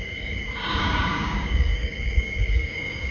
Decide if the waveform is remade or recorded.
remade